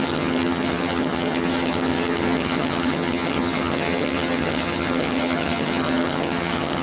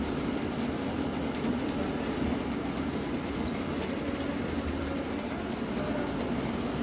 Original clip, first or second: second